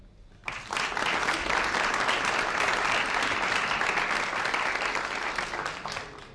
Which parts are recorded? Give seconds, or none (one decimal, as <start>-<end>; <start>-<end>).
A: 0.0-0.4; 4.2-6.3